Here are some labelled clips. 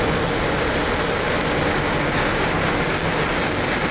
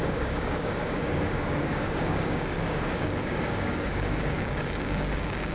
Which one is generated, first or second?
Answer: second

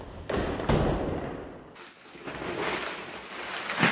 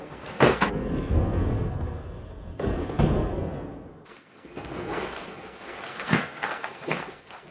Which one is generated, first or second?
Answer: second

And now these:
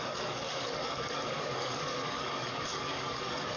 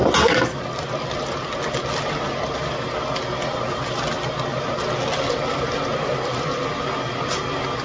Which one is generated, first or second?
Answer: first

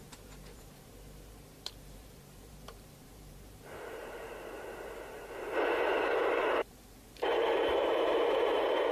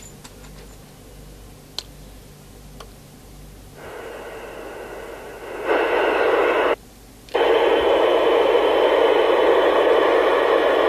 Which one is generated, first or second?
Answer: first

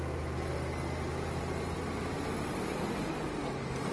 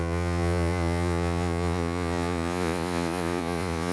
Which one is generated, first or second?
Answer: second